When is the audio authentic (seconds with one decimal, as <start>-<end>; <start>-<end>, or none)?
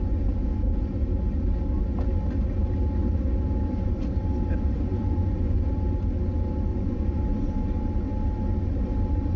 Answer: 0.0-4.9; 5.7-6.7; 7.2-9.4